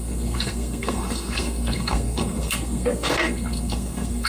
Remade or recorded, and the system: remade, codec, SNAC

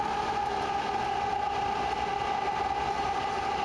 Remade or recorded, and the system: recorded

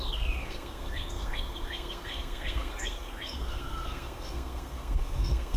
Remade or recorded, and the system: remade, codec, SNAC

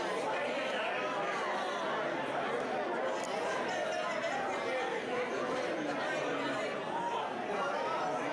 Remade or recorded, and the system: recorded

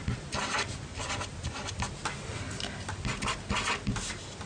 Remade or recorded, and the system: recorded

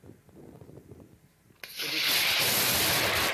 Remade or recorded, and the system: recorded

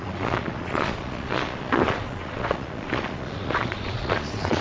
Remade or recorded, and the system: remade, vocoder, Vocos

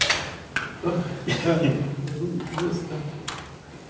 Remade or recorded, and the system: recorded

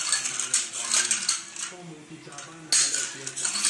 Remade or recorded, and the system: recorded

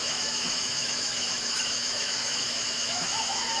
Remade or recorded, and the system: remade, autoencoder, DAC-VAE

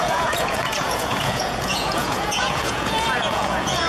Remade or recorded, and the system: remade, vocoder, Vocos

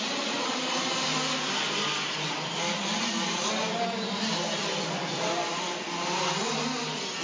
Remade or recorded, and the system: recorded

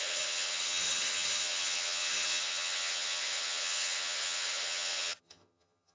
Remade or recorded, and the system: remade, vocoder, HiFi-GAN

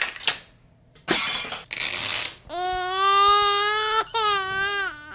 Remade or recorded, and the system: recorded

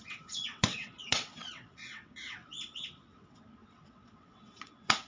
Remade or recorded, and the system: remade, vocoder, WaveNeXt